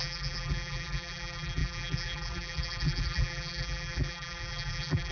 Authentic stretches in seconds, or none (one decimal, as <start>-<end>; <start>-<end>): none